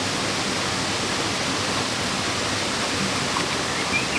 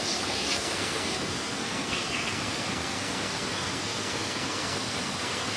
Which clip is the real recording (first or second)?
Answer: first